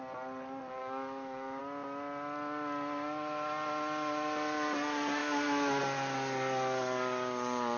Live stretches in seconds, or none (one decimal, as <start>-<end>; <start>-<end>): 0.0-0.8; 1.6-5.2; 5.8-7.8